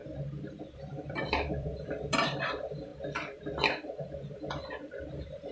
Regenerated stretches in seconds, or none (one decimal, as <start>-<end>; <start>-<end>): 0.6-2.9; 5.1-5.5